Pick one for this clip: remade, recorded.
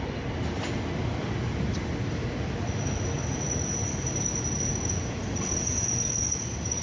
recorded